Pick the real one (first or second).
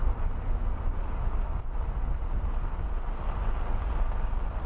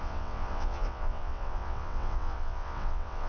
first